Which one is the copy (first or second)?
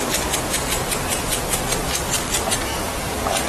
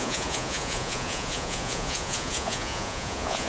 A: second